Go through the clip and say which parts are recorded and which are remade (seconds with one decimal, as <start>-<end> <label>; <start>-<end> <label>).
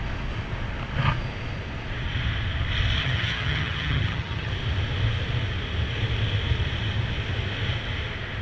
0.0-3.0 recorded; 3.0-4.5 remade; 4.5-8.4 recorded